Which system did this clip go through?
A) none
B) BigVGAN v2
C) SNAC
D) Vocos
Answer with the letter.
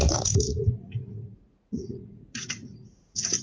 D